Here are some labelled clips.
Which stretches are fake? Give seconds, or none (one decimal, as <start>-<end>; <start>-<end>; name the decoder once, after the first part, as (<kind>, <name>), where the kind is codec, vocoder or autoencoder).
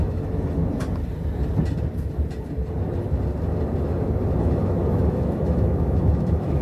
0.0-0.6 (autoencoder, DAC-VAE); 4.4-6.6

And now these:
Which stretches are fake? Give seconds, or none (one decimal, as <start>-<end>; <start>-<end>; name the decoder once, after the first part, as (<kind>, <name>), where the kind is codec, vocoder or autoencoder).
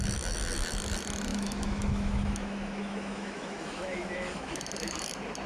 1.3-4.6 (autoencoder, DAC-VAE)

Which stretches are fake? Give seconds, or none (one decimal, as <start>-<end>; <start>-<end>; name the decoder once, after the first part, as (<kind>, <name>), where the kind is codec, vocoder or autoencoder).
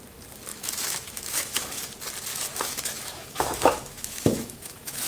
0.5-1.8 (autoencoder, DAC-VAE); 2.3-5.1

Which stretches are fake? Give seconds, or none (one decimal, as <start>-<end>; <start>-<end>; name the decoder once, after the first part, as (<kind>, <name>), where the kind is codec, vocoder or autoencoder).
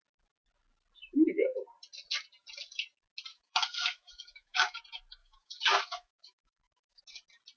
3.3-4.8 (autoencoder, DAC-VAE); 5.2-7.0